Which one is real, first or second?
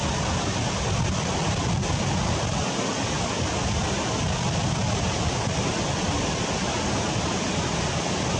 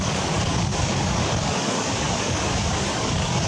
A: first